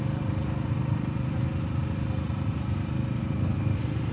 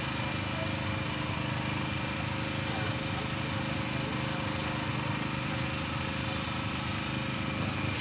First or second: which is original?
second